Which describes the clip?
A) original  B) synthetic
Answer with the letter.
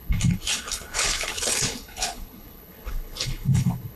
B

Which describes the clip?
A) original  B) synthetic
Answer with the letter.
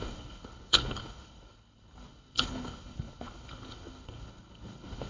B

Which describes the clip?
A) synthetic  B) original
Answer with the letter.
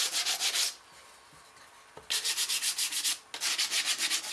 B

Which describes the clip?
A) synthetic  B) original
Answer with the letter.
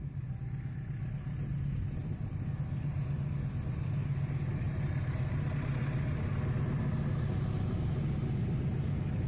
B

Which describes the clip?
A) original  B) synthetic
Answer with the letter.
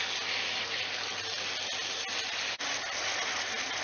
A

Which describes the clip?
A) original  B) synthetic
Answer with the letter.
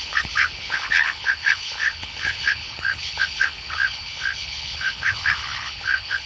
B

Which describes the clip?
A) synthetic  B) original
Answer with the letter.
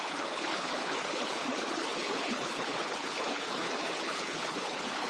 A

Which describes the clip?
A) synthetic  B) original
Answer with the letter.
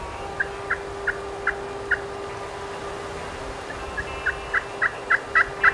B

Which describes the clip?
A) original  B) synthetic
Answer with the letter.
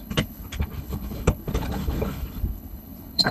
B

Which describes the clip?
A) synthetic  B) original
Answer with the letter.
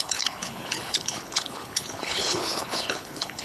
A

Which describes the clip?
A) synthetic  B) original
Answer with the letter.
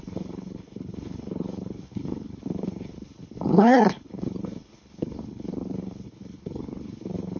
A